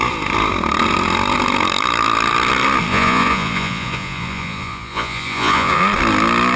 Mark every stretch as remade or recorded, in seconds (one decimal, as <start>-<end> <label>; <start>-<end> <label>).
0.0-2.9 recorded; 2.9-5.8 remade; 5.8-6.6 recorded